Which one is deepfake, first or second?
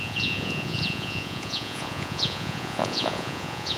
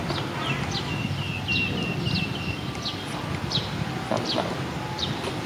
first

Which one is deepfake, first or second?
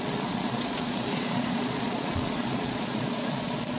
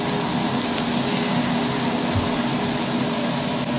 first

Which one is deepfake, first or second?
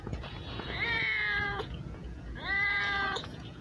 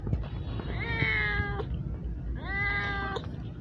first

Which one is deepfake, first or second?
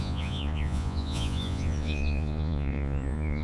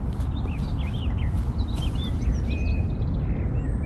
first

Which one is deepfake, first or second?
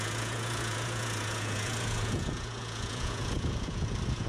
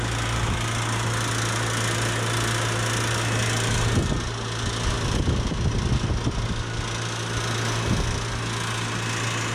first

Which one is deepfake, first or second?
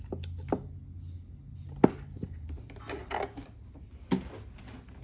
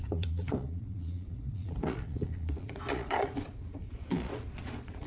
second